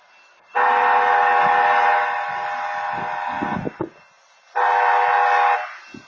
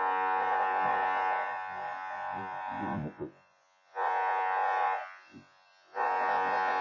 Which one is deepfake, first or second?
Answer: second